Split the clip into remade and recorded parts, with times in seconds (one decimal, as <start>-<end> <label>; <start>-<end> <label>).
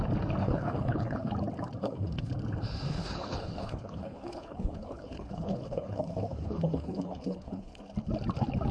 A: 0.0-0.4 recorded; 0.4-1.3 remade; 1.3-1.8 recorded; 1.8-2.3 remade; 2.3-2.9 recorded; 2.9-7.8 remade; 7.8-8.7 recorded